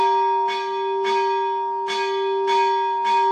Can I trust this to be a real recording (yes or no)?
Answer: yes